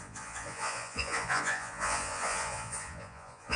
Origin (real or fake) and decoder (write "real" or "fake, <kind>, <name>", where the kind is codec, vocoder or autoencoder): fake, vocoder, Vocos